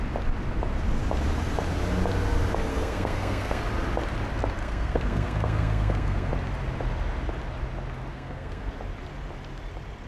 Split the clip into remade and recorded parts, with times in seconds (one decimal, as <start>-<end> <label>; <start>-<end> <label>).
0.0-2.7 recorded; 2.7-3.6 remade; 3.6-4.6 recorded; 4.6-6.3 remade; 6.3-8.1 recorded; 8.1-8.7 remade; 8.7-10.1 recorded

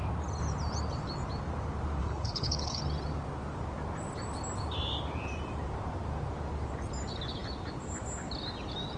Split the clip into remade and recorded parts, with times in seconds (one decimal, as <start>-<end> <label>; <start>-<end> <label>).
0.0-2.0 recorded; 2.0-2.8 remade; 2.8-9.0 recorded

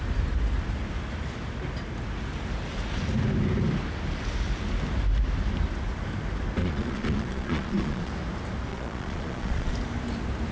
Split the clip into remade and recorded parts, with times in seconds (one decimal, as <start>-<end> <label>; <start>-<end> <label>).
0.0-6.6 recorded; 6.6-8.1 remade; 8.1-8.7 recorded; 8.7-9.7 remade; 9.7-10.5 recorded

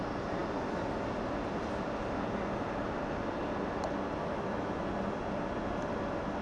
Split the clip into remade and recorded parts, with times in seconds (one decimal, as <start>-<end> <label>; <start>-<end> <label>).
0.0-4.2 recorded; 4.2-4.7 remade; 4.7-6.4 recorded